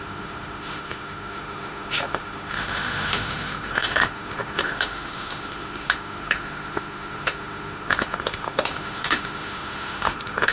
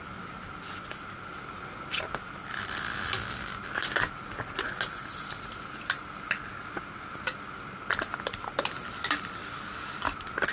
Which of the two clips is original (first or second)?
second